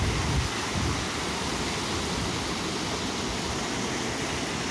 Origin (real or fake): real